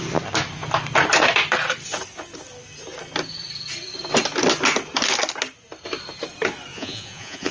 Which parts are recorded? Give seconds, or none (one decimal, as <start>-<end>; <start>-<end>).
0.0-6.7

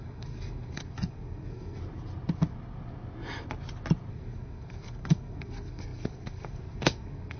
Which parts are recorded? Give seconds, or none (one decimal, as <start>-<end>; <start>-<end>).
1.8-4.1

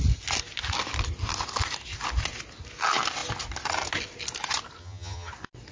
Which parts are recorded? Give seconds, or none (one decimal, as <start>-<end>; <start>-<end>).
0.0-4.8; 5.3-5.7

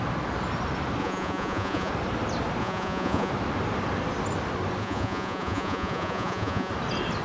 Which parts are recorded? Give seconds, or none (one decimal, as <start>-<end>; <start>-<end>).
0.0-1.0; 1.9-2.6; 3.3-4.8; 6.7-7.2

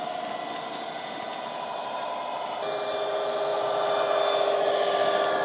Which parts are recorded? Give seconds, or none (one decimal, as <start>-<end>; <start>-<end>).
0.0-5.4

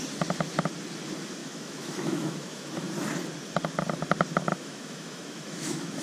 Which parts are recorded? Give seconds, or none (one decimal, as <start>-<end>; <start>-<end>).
0.0-1.4; 2.9-4.5

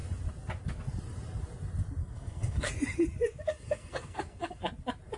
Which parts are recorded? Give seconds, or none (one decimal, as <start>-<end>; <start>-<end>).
0.0-2.0; 2.7-3.5; 4.6-5.2